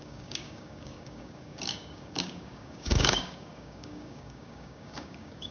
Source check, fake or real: fake